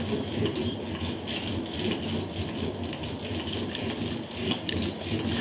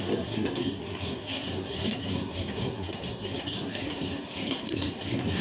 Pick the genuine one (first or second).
first